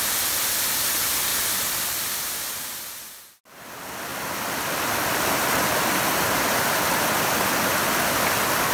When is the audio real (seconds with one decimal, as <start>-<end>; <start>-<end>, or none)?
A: 0.0-1.3; 2.8-8.7